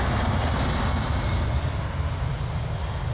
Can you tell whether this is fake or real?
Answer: real